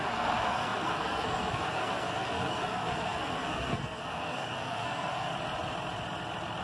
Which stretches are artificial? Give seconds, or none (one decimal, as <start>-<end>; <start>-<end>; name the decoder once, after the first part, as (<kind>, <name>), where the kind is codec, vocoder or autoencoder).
0.0-5.3 (codec, SNAC)